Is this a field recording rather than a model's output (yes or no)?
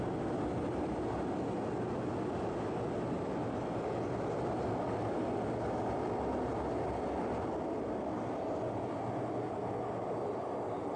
yes